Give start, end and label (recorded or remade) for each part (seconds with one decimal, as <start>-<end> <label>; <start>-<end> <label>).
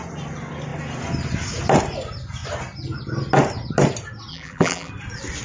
0.0-4.3 recorded; 4.3-4.9 remade; 4.9-5.4 recorded